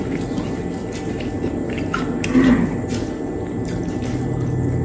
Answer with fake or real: real